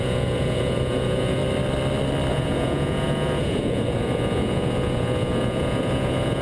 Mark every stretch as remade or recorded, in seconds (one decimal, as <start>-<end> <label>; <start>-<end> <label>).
0.0-1.4 remade; 1.4-2.3 recorded; 2.3-6.4 remade